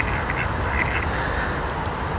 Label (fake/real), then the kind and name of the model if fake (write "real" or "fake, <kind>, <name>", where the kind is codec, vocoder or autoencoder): real